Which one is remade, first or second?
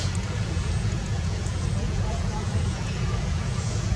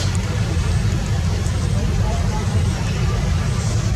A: first